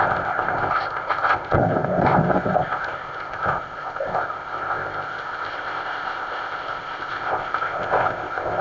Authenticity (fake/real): fake